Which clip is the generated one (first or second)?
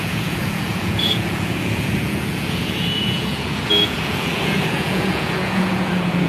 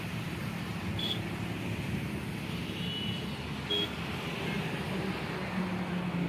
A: first